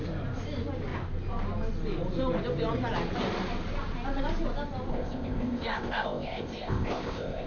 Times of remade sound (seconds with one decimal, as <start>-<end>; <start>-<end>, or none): 4.9-7.5